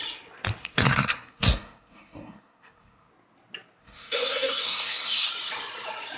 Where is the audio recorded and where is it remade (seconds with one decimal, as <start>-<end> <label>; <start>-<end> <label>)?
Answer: 0.0-0.6 recorded; 0.6-3.1 remade; 3.1-3.8 recorded; 3.8-5.3 remade; 5.3-6.2 recorded